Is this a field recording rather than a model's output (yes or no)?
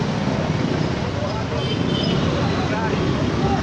yes